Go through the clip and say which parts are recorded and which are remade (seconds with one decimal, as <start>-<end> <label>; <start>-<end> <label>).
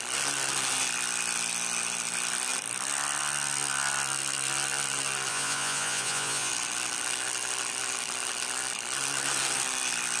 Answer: 0.0-5.3 recorded; 5.3-6.5 remade; 6.5-10.2 recorded